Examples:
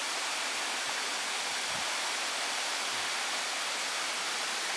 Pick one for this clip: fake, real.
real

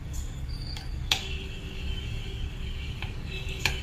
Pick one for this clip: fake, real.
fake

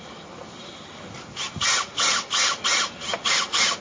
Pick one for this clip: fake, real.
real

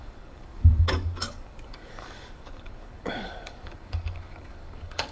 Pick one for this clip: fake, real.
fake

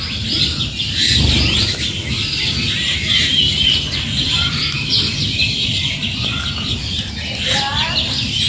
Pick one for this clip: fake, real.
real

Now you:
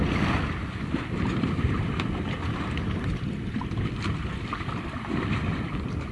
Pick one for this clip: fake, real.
fake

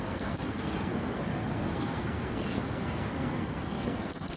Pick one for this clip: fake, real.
fake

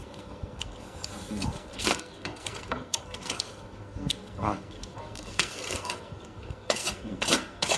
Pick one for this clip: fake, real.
fake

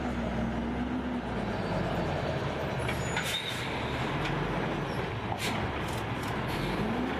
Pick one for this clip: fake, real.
real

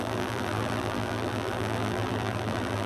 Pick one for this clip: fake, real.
fake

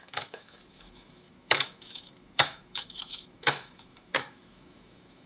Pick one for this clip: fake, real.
fake